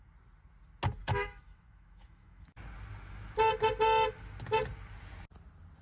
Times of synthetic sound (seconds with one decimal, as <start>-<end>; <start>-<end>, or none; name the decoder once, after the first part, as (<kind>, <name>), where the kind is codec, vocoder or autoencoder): 1.0-2.5 (autoencoder, DAC-VAE)